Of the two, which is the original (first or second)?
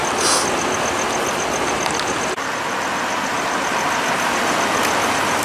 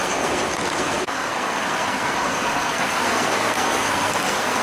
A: first